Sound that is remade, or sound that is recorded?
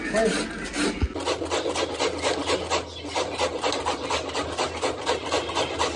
recorded